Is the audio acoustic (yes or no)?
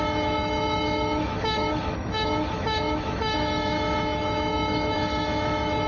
no